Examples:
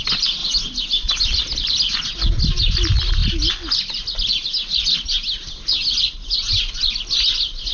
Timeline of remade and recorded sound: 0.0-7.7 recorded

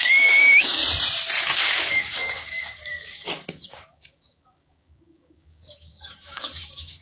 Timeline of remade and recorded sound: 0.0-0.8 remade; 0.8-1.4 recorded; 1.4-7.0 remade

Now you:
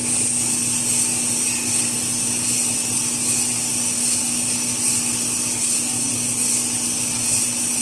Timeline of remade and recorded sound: 0.0-7.8 recorded